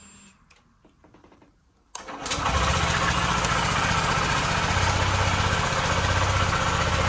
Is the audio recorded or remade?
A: recorded